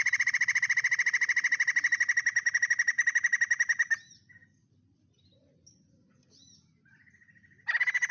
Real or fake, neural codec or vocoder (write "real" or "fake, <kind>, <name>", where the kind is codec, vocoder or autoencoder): real